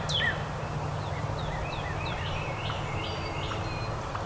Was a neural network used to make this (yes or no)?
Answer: no